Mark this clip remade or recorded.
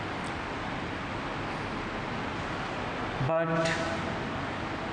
recorded